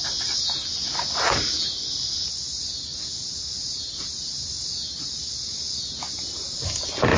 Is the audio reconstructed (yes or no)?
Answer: no